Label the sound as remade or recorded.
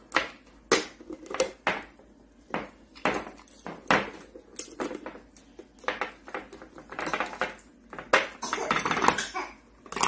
recorded